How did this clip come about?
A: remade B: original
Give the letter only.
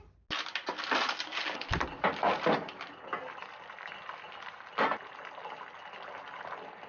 B